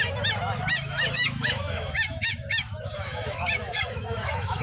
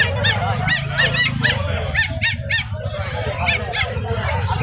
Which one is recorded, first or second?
second